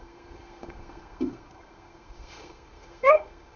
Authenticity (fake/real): fake